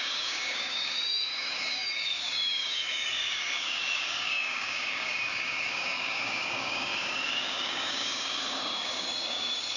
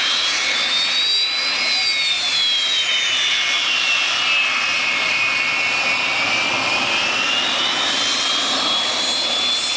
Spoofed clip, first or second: first